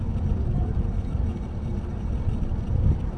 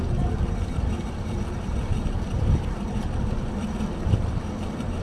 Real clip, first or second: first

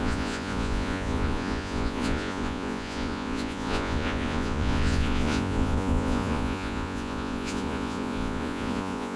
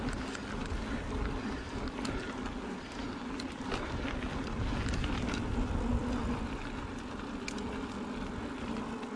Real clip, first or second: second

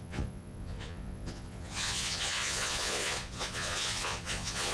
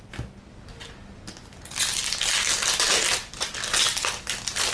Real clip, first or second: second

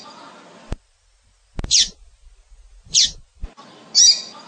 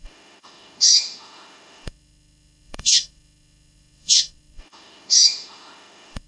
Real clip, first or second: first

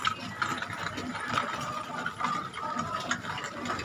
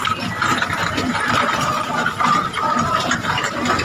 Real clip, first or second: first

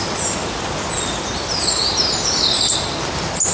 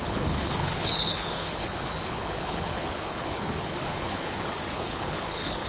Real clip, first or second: first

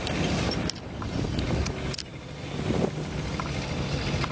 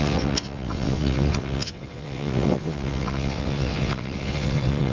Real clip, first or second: first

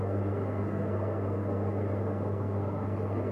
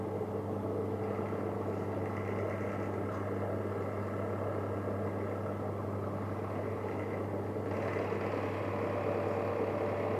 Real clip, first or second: second